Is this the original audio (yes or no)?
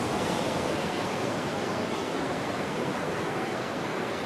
no